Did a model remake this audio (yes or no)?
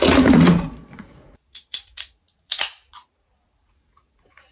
yes